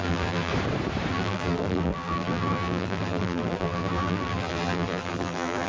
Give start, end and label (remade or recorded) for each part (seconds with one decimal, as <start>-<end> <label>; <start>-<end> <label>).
0.0-0.5 remade; 0.5-1.1 recorded; 1.1-5.7 remade